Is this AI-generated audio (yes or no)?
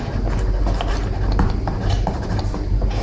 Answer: no